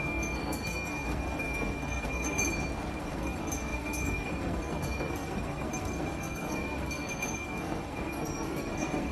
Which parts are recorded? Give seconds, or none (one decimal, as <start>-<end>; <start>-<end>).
2.4-3.0